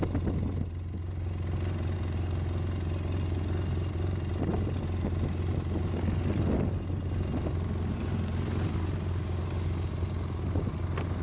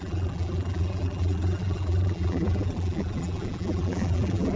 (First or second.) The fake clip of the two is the second